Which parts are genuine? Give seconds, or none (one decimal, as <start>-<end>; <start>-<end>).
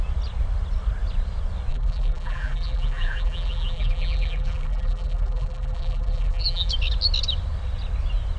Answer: 0.0-1.7; 6.7-8.4